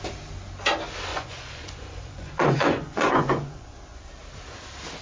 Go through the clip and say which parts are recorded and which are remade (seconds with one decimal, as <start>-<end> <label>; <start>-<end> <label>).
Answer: 0.0-1.1 recorded; 1.1-4.1 remade; 4.1-5.0 recorded